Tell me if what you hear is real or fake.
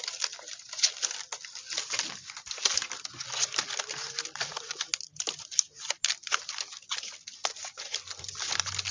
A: real